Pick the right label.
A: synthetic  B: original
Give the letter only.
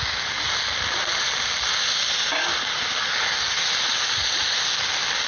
B